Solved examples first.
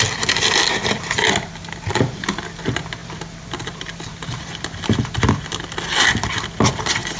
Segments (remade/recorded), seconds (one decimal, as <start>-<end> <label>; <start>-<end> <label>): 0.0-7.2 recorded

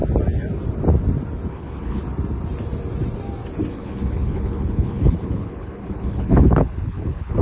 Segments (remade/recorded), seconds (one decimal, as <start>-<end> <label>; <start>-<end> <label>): 0.0-1.5 recorded; 1.5-2.0 remade; 2.0-3.7 recorded; 3.7-7.4 remade

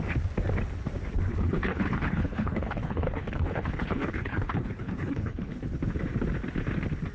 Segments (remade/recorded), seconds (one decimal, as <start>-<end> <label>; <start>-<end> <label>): 0.0-1.3 recorded; 1.3-5.6 remade; 5.6-7.1 recorded

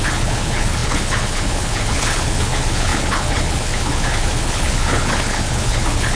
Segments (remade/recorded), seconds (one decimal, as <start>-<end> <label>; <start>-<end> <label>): 0.0-6.1 remade

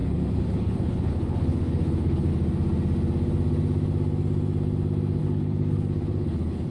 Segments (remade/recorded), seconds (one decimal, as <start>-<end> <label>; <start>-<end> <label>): 0.0-2.3 remade; 2.3-5.2 recorded; 5.2-6.7 remade

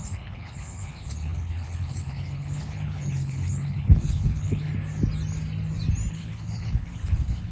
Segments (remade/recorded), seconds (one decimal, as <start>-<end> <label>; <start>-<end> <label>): 0.0-4.7 remade; 4.7-6.1 recorded; 6.1-7.5 remade

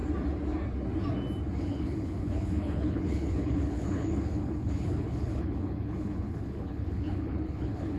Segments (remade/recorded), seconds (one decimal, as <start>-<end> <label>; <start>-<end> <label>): 0.0-1.6 recorded; 1.6-8.0 remade